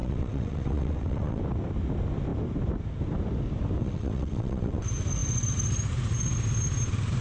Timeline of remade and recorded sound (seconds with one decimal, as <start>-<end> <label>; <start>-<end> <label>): 0.0-1.4 remade; 1.4-3.8 recorded; 3.8-4.8 remade; 4.8-7.2 recorded